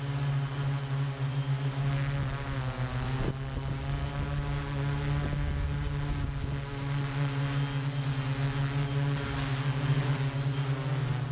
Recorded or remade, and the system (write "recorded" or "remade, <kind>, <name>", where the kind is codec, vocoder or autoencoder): recorded